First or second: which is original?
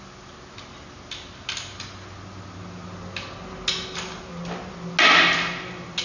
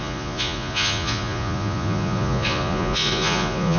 first